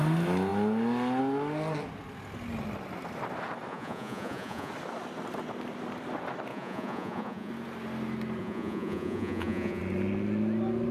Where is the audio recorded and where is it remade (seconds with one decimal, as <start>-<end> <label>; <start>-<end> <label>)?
0.0-3.7 recorded; 3.7-4.7 remade; 4.7-6.5 recorded; 6.5-7.5 remade; 7.5-8.4 recorded; 8.4-9.8 remade; 9.8-10.9 recorded